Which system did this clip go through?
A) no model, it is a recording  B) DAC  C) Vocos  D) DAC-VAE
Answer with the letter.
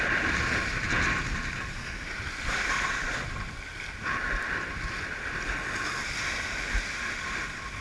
A